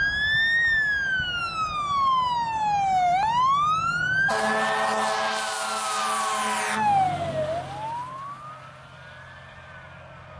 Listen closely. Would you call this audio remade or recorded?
recorded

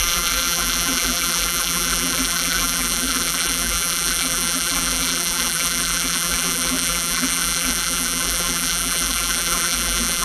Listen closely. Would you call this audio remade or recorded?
remade